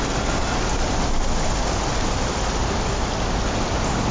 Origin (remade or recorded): recorded